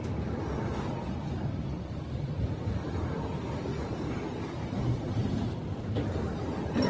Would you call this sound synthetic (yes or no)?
no